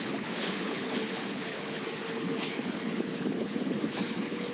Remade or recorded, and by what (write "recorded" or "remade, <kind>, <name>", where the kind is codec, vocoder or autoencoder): remade, codec, HILCodec